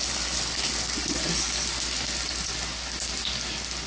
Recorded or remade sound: recorded